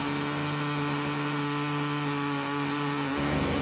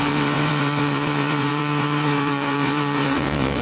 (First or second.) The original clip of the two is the first